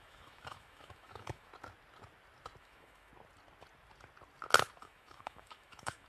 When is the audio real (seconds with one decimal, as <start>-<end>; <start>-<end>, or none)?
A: 1.5-2.6; 3.1-4.8